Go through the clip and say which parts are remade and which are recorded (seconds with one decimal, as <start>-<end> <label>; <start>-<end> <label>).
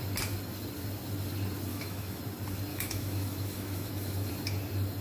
0.0-1.7 recorded; 1.7-2.2 remade; 2.2-2.7 recorded; 2.7-4.3 remade; 4.3-5.0 recorded